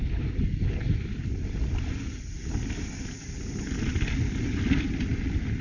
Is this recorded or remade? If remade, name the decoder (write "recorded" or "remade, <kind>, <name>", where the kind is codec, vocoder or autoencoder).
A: recorded